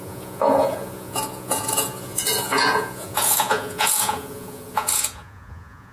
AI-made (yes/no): yes